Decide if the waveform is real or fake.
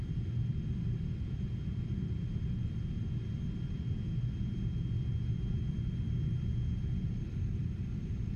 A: real